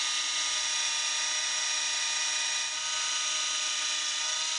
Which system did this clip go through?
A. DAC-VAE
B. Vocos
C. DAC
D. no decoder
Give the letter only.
D